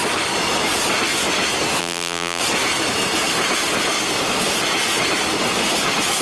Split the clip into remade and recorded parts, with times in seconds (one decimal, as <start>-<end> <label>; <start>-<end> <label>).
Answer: 0.0-1.8 recorded; 1.8-2.4 remade; 2.4-6.2 recorded

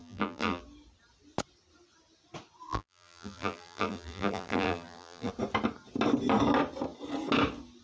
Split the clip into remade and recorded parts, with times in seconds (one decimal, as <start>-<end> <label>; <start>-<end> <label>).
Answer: 0.0-0.6 remade; 0.6-2.7 recorded; 2.7-5.3 remade; 5.3-7.8 recorded

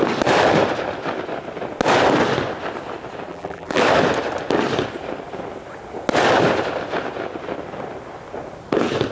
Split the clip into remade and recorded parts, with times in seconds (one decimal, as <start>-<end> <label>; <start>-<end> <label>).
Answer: 0.0-3.3 recorded; 3.3-3.8 remade; 3.8-9.1 recorded

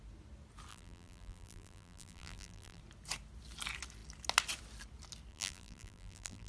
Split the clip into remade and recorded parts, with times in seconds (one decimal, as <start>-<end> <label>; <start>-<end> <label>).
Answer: 0.0-0.7 recorded; 0.7-2.8 remade; 2.8-5.3 recorded; 5.3-6.5 remade

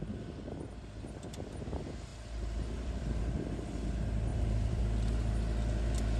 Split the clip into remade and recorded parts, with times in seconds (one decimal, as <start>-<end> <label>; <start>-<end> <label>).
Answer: 0.0-2.1 recorded; 2.1-3.2 remade; 3.2-4.3 recorded; 4.3-4.8 remade; 4.8-6.2 recorded